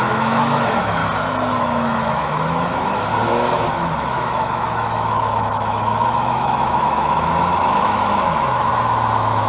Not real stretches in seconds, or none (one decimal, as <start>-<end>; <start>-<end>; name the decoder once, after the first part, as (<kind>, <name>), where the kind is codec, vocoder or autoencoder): 0.0-1.0 (autoencoder, DAC-VAE); 1.6-3.1; 3.7-8.7